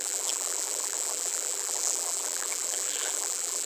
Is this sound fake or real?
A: fake